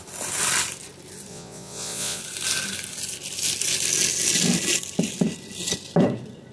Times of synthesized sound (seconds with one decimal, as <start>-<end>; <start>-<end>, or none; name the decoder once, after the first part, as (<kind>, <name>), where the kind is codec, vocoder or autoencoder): 1.3-2.2 (vocoder, Vocos)